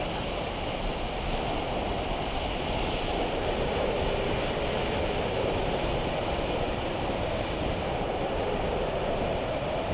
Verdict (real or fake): real